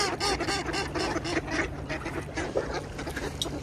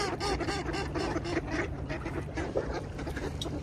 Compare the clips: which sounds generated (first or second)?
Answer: second